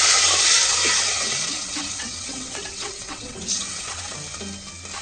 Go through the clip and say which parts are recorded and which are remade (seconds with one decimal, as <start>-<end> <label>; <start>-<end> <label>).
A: 0.0-1.1 recorded; 1.1-4.1 remade; 4.1-5.0 recorded